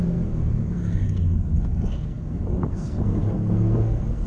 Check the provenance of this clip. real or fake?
fake